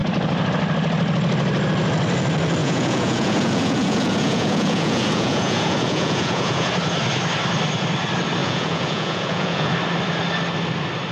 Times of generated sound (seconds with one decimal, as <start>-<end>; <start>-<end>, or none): 2.6-6.7; 8.4-9.7